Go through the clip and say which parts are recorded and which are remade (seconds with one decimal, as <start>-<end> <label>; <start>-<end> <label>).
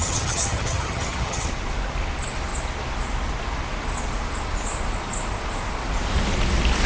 0.0-1.5 remade; 1.5-6.9 recorded